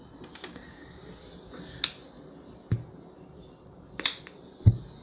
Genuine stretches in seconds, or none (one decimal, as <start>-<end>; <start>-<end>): 0.0-5.0